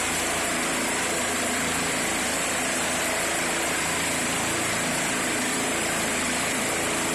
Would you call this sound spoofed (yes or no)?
yes